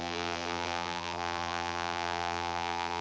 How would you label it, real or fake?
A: fake